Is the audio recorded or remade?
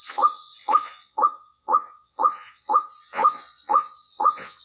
remade